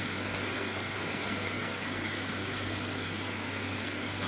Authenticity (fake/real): fake